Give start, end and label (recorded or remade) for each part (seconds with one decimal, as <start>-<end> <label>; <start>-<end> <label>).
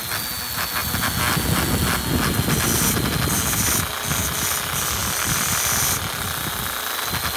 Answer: 0.0-5.0 recorded; 5.0-6.5 remade; 6.5-7.4 recorded